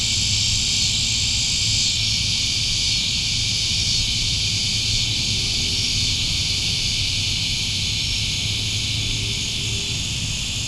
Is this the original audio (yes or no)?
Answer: yes